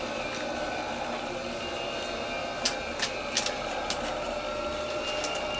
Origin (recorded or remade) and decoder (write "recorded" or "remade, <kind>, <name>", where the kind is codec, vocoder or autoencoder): recorded